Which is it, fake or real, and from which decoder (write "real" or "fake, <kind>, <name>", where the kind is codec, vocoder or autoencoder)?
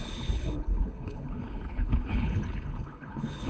fake, codec, HILCodec